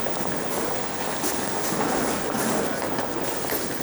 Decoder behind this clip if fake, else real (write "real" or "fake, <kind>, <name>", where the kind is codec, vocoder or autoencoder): real